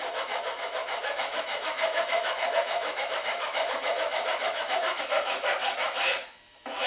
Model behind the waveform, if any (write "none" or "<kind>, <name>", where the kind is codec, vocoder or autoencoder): autoencoder, DAC-VAE